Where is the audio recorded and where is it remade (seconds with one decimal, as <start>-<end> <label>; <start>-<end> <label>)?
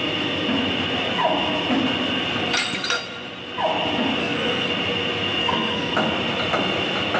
0.0-4.2 recorded; 4.2-4.7 remade; 4.7-5.4 recorded; 5.4-5.9 remade; 5.9-7.2 recorded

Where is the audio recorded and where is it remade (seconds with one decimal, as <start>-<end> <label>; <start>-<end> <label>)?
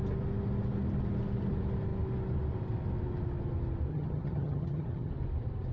0.0-3.9 recorded; 3.9-5.1 remade; 5.1-5.7 recorded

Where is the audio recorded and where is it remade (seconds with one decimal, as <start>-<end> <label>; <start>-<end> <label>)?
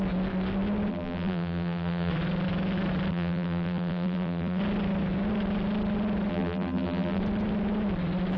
0.0-0.9 recorded; 0.9-2.1 remade; 2.1-3.1 recorded; 3.1-4.6 remade; 4.6-6.3 recorded; 6.3-7.2 remade; 7.2-8.4 recorded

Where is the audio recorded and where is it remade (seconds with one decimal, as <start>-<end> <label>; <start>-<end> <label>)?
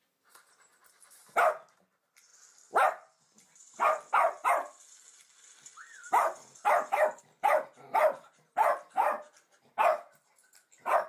0.0-0.8 remade; 0.8-1.8 recorded; 1.8-11.1 remade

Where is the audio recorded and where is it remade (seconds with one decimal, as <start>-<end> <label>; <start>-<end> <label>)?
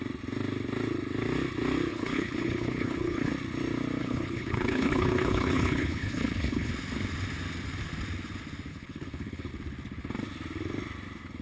0.0-1.9 recorded; 1.9-3.3 remade; 3.3-4.0 recorded; 4.0-6.7 remade; 6.7-8.7 recorded; 8.7-9.5 remade; 9.5-11.4 recorded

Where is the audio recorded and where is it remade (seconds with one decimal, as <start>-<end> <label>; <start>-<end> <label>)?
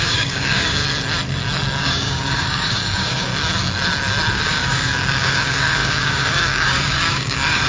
0.0-0.8 remade; 0.8-1.8 recorded; 1.8-3.3 remade; 3.3-4.3 recorded; 4.3-7.7 remade